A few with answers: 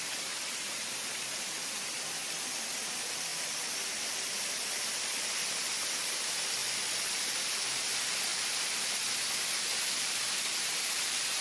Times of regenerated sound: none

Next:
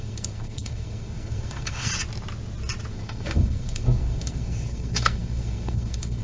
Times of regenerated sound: 0.0-1.9 (codec, SNAC); 2.9-6.2